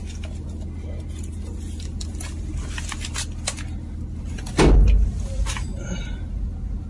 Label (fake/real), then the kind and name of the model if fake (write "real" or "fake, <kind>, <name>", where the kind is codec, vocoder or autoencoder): real